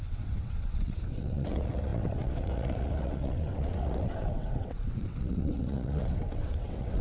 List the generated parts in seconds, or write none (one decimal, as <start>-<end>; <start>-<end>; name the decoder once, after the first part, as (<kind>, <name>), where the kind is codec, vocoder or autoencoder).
0.0-7.0 (vocoder, WaveNeXt)